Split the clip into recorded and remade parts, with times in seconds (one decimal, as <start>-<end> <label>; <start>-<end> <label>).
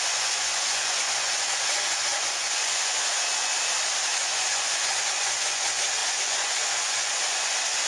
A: 0.0-3.5 remade; 3.5-4.2 recorded; 4.2-7.9 remade